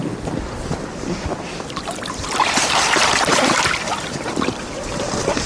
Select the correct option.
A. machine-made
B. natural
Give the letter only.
A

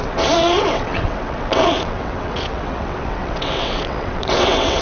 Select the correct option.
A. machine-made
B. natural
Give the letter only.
A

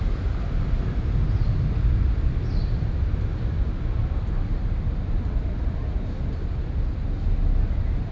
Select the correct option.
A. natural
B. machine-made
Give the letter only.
A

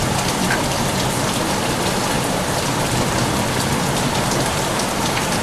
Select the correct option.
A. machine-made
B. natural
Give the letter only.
A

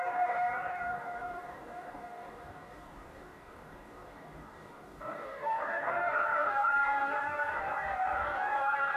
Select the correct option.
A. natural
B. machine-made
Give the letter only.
B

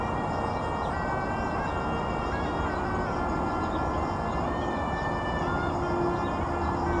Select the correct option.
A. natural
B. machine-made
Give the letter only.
A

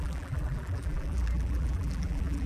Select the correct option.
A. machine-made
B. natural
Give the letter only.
A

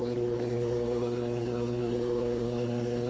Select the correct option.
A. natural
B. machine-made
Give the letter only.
B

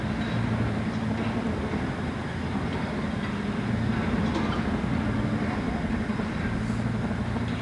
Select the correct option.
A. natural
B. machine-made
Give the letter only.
A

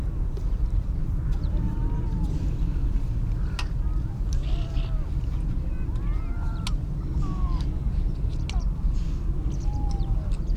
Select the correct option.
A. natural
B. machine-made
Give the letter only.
A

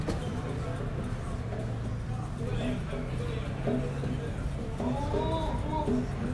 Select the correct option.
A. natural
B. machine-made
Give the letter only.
A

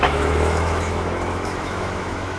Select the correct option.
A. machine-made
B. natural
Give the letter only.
A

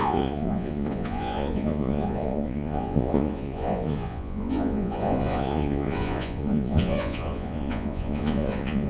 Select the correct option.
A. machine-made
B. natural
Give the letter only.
A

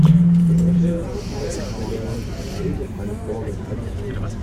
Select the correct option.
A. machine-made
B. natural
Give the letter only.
A